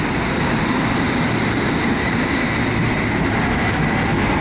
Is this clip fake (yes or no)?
no